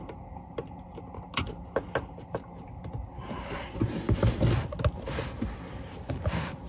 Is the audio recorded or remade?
recorded